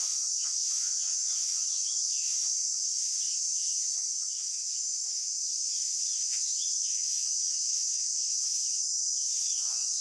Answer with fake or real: fake